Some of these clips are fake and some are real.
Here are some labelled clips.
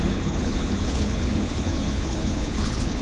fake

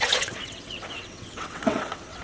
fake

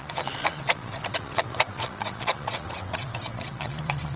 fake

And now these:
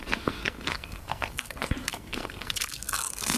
fake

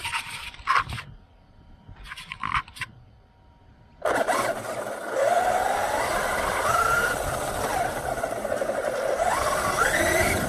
fake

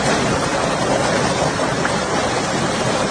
real